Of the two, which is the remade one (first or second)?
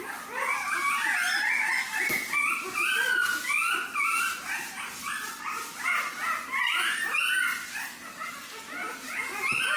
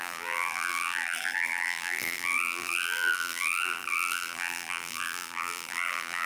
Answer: second